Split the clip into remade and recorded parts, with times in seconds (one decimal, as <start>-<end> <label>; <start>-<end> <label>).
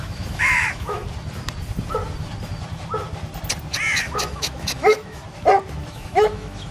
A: 0.0-1.0 remade; 1.0-4.0 recorded; 4.0-5.2 remade; 5.2-5.8 recorded; 5.8-6.7 remade